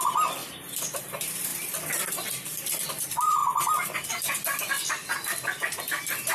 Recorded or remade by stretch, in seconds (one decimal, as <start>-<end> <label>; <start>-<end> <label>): 0.0-0.4 recorded; 0.4-1.0 remade; 1.0-3.4 recorded; 3.4-4.1 remade; 4.1-6.3 recorded